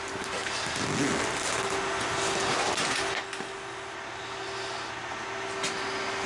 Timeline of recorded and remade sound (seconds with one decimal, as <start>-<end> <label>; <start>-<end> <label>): 0.0-6.3 recorded